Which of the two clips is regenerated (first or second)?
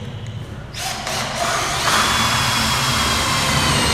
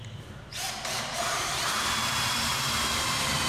second